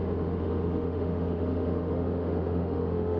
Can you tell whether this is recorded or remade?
remade